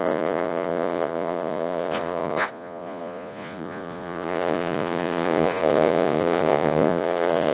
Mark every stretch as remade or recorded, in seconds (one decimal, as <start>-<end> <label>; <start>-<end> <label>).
0.0-7.5 remade